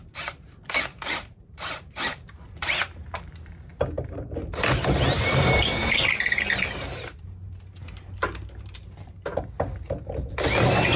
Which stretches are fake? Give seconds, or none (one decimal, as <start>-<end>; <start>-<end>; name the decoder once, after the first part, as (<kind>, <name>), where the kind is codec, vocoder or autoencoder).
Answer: 0.0-3.7 (vocoder, BigVGAN v2); 5.2-11.0